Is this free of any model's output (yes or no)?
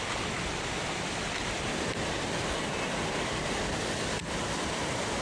no